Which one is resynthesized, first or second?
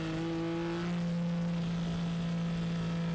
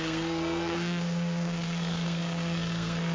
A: second